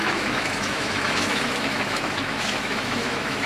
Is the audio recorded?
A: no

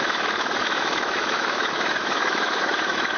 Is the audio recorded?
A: no